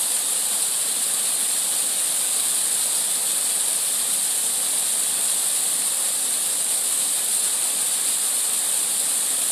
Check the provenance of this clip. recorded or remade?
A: recorded